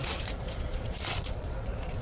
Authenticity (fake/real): fake